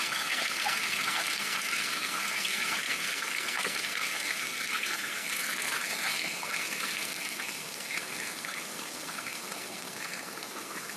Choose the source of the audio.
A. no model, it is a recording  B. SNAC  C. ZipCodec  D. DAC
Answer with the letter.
B